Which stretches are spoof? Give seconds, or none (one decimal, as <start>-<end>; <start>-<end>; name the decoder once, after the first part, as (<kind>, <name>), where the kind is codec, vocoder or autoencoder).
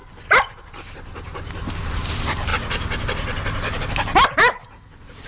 none